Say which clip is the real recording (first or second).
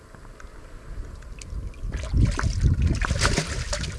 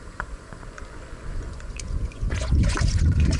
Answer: first